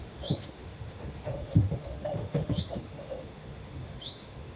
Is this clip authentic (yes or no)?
no